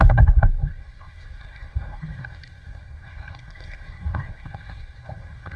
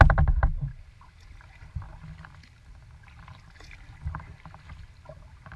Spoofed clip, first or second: first